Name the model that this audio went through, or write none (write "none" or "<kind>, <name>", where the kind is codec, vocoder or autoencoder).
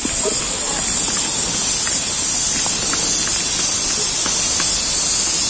none